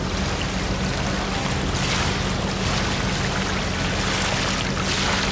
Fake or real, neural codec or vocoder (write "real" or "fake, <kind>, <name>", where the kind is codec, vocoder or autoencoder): real